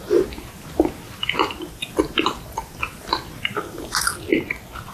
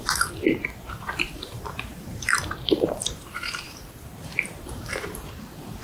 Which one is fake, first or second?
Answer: second